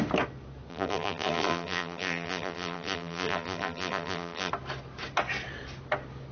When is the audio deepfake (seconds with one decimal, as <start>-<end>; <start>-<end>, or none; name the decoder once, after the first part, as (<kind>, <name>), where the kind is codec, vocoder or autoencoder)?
0.7-4.5 (vocoder, BigVGAN v2)